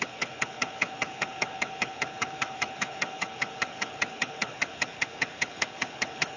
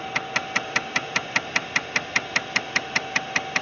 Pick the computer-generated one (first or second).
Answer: first